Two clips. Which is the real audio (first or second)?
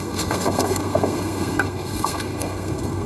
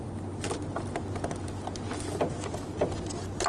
second